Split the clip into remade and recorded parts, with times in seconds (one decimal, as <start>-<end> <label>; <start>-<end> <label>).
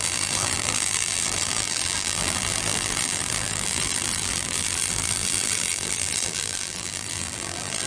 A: 0.0-7.9 remade